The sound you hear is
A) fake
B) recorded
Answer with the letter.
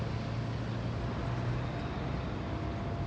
B